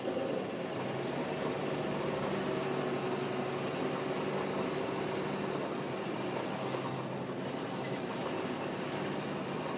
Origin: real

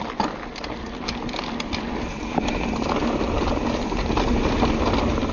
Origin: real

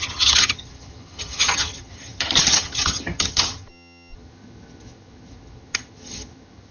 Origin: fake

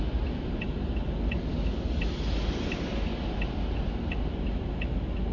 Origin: real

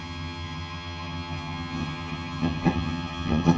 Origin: fake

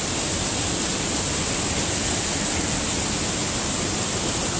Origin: real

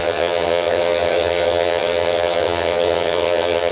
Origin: fake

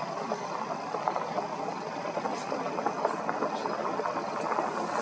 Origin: real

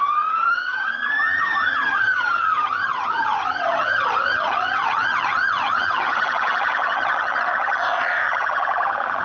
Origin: fake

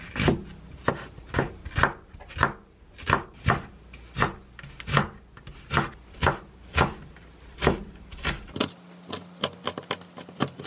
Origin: real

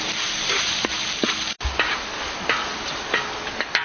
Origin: real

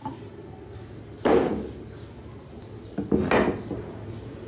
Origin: real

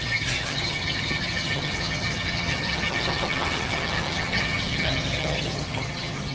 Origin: fake